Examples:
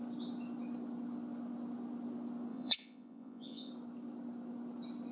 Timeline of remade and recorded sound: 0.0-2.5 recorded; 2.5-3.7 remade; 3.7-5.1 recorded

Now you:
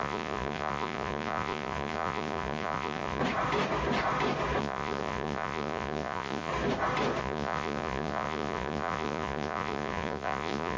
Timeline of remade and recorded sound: 0.0-3.2 remade; 3.2-4.6 recorded; 4.6-6.5 remade; 6.5-7.2 recorded; 7.2-10.8 remade

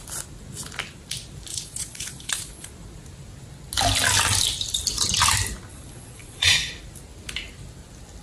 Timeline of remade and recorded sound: 0.0-1.5 recorded; 1.5-2.7 remade; 2.7-5.7 recorded; 5.7-6.7 remade; 6.7-8.2 recorded

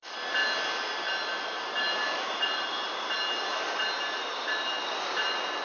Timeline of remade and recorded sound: 0.0-5.6 recorded

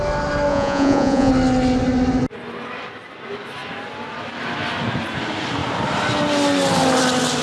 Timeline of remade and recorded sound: 0.0-0.5 recorded; 0.5-1.3 remade; 1.3-7.4 recorded

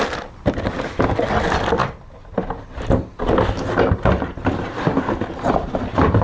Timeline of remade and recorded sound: 0.0-6.2 recorded

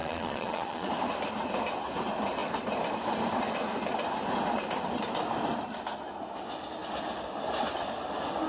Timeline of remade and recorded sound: 0.0-0.9 remade; 0.9-8.5 recorded